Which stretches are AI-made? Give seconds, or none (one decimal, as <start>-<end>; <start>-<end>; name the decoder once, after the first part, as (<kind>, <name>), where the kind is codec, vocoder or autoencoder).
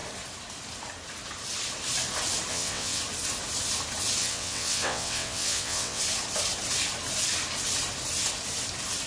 2.5-3.0 (vocoder, WaveNeXt); 4.2-6.0